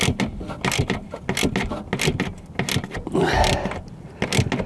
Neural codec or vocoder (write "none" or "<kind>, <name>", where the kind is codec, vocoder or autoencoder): none